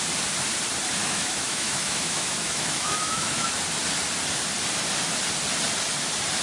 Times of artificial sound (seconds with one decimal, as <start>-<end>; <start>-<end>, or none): 1.0-3.5

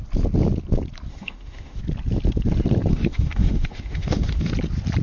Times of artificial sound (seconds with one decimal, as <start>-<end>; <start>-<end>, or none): 1.1-1.8; 2.9-4.5

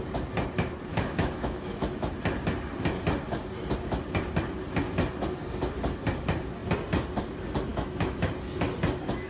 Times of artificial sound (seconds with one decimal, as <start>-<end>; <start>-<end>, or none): 0.9-2.0; 7.7-8.3

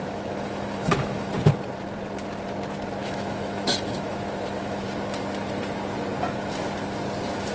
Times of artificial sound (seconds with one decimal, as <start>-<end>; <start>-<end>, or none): 0.0-1.3; 3.0-4.8